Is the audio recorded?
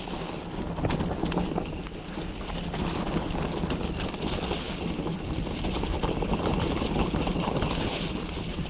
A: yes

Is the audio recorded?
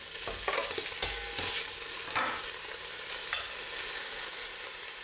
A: yes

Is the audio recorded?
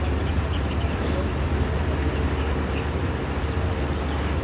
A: yes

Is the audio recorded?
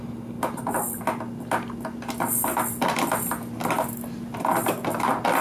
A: yes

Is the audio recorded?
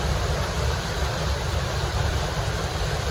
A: no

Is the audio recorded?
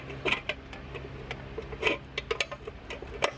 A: yes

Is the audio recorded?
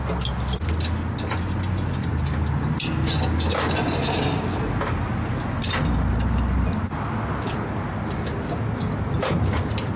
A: yes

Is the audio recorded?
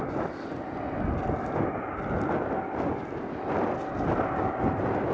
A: yes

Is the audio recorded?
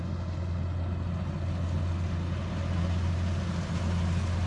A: yes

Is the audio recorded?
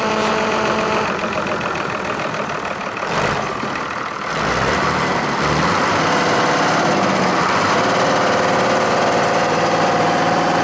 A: no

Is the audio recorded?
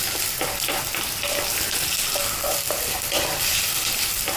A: yes